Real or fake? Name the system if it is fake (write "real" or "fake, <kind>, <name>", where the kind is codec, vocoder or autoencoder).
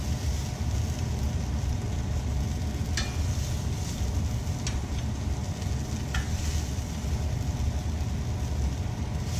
real